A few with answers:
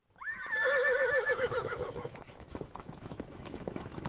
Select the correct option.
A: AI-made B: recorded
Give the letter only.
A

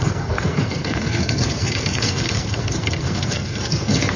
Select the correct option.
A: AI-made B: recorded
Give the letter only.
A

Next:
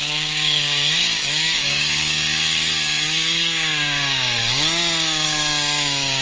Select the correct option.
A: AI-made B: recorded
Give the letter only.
A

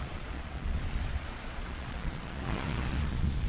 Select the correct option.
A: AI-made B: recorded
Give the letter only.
A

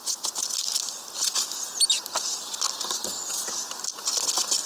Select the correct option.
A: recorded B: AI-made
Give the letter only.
A